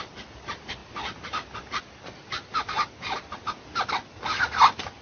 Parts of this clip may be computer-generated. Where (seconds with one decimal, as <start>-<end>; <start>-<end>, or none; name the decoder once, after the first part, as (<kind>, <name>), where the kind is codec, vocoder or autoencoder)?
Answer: none